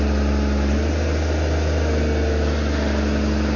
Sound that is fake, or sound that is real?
real